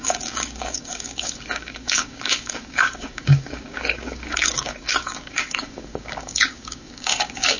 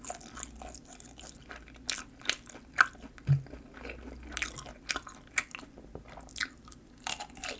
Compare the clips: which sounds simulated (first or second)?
first